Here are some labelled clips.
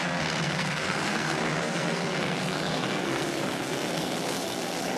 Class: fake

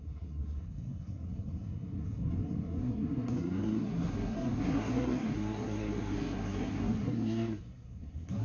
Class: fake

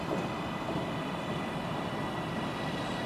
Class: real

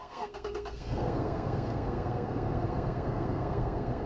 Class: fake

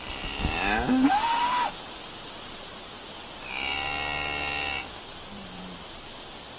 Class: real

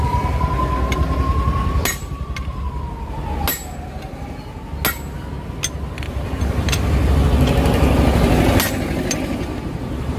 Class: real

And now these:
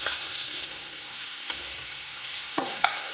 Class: fake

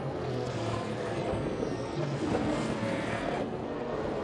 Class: fake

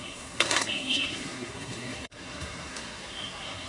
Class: fake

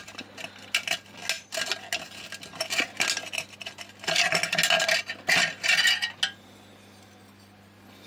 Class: real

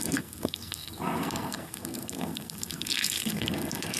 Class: fake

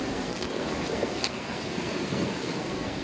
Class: fake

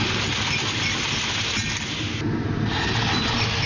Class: real